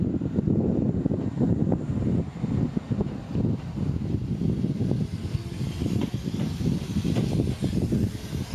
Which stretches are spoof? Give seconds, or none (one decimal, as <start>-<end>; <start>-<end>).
none